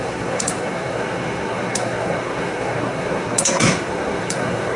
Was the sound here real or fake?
fake